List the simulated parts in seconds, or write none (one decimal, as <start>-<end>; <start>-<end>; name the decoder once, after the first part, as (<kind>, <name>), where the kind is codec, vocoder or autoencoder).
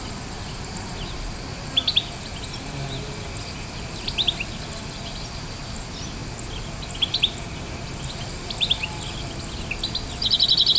none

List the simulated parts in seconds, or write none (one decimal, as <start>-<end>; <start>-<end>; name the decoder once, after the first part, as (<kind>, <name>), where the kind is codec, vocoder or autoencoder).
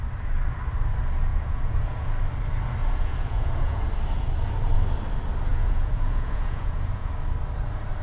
1.3-2.1 (vocoder, Vocos); 2.8-3.8; 5.5-7.1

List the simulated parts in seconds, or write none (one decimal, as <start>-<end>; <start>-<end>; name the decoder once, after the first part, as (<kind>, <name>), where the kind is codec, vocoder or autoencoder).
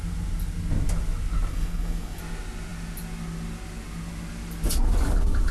1.5-2.2 (codec, SNAC)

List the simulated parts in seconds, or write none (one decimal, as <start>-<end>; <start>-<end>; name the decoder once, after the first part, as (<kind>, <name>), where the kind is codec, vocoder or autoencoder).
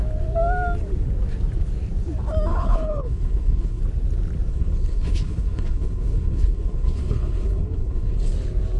2.5-3.8 (codec, HILCodec); 4.5-8.3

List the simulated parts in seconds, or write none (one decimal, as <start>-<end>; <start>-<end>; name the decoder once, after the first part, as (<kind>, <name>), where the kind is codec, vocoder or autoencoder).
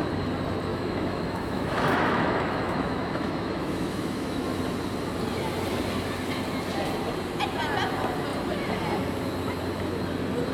0.7-4.6 (autoencoder, DAC-VAE)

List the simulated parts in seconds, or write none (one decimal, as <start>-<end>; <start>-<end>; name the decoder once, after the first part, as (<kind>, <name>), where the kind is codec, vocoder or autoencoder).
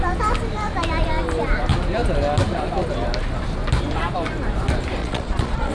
5.0-5.7 (vocoder, Vocos)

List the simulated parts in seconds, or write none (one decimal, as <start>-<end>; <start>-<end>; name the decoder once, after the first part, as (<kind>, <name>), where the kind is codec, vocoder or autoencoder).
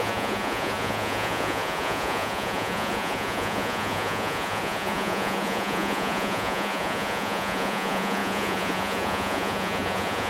0.0-10.3 (vocoder, Vocos)